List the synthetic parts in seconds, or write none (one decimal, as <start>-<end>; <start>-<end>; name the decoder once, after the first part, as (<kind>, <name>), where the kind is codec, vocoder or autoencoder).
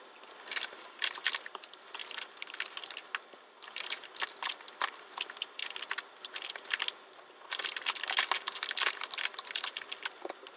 none